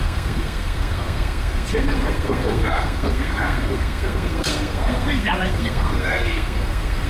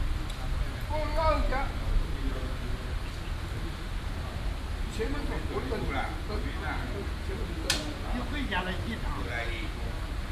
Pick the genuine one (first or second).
second